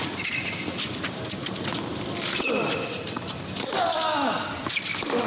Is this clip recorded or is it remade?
remade